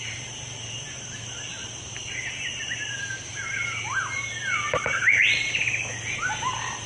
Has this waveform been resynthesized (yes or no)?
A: no